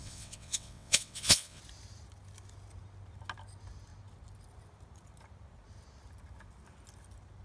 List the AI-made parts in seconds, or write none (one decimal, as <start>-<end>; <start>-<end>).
0.0-1.6